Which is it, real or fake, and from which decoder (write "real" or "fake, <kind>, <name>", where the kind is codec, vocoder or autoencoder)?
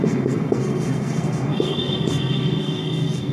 fake, codec, SNAC